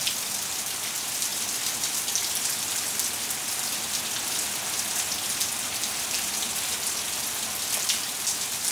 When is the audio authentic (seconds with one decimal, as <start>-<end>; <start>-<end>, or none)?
0.0-1.3; 2.1-8.7

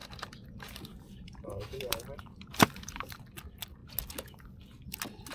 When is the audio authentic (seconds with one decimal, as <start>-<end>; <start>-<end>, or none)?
3.2-5.3

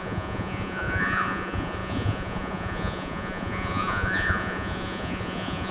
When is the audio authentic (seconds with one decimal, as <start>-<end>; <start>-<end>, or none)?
none

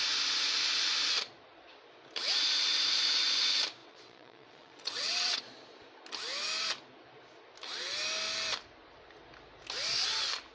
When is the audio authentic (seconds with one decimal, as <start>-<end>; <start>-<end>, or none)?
0.0-3.8; 5.4-10.5

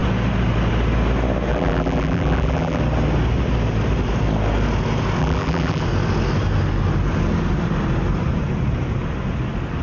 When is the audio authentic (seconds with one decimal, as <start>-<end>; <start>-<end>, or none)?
0.0-1.5; 2.8-5.2; 5.8-9.8

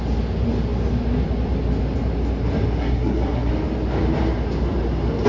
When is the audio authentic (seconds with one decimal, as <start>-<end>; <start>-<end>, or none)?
0.0-2.8; 3.5-5.3

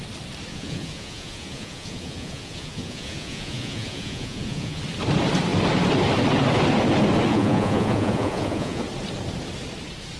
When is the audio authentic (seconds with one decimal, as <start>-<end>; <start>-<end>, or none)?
0.0-0.5; 4.8-7.3; 8.8-10.2